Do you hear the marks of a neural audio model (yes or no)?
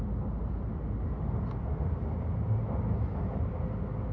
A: no